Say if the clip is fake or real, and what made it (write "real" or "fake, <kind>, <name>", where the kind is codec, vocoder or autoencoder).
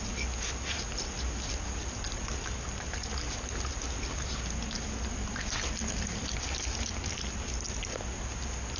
real